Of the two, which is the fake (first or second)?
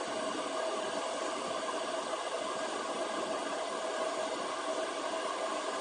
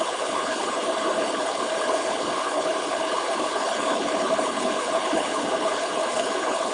second